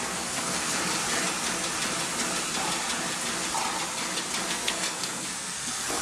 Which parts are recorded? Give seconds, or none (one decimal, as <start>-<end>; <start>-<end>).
0.9-4.5